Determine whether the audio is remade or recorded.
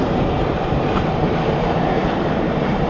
remade